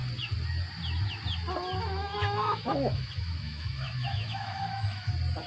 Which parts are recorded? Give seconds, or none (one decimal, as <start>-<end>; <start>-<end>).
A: 0.0-1.8; 5.1-5.5